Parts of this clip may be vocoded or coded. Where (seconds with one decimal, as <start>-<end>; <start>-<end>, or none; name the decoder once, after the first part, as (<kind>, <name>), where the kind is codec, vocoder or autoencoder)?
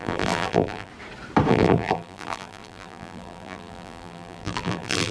0.0-0.9 (vocoder, BigVGAN v2); 1.5-5.1